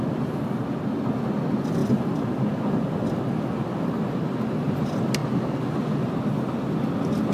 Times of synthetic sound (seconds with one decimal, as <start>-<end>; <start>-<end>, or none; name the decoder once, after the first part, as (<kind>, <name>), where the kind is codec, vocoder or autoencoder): none